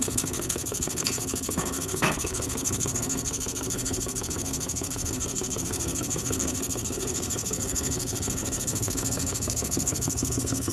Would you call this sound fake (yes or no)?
yes